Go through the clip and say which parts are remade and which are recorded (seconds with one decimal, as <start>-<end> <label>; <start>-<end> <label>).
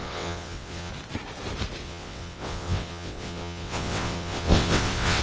0.0-0.9 remade; 0.9-1.8 recorded; 1.8-5.2 remade